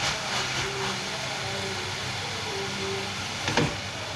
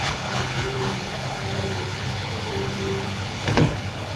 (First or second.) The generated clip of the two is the second